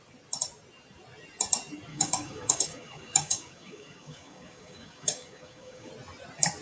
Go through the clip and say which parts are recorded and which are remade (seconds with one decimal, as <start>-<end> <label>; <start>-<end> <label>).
0.0-1.9 recorded; 1.9-5.9 remade; 5.9-6.6 recorded